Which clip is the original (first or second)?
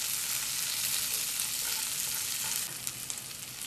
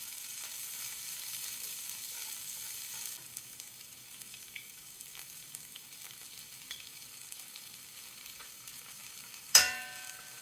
first